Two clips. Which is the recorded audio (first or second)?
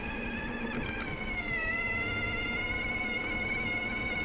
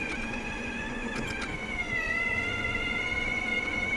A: first